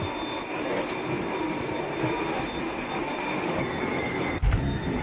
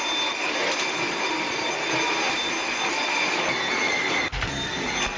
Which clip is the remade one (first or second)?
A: first